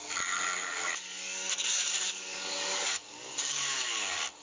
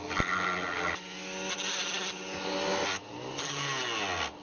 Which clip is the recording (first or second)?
second